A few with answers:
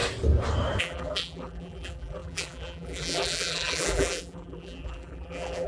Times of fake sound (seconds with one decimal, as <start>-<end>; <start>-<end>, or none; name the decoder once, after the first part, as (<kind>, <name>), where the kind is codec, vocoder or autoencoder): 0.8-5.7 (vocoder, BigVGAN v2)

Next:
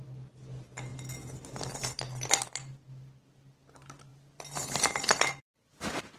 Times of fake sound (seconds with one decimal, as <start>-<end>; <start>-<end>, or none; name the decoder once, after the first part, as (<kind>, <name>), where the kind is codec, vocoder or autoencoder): 4.1-6.2 (vocoder, BigVGAN v2)

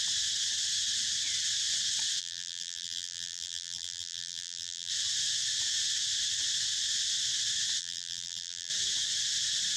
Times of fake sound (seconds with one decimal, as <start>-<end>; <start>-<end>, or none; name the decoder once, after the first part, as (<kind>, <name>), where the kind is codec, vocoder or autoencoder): 2.2-4.9 (vocoder, BigVGAN v2); 7.8-8.7

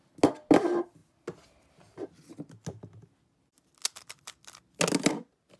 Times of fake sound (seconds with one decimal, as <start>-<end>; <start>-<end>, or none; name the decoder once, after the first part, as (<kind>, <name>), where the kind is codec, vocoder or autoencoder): none

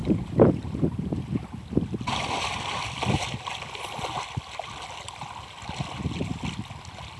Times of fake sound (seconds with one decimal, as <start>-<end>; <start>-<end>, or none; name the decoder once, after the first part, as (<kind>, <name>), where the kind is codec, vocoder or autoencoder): 0.0-1.6 (vocoder, BigVGAN v2)

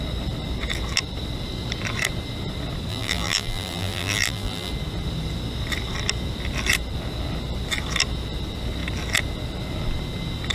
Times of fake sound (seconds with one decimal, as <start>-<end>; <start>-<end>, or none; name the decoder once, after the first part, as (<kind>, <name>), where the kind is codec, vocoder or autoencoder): 2.9-4.7 (vocoder, BigVGAN v2)